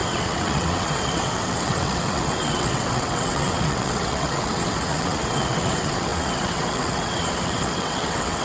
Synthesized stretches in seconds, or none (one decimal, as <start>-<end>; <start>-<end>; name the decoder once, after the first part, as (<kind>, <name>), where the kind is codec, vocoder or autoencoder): 0.0-8.4 (vocoder, WaveNeXt)